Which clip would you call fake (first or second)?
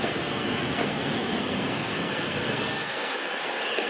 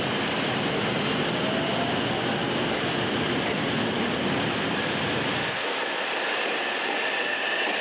first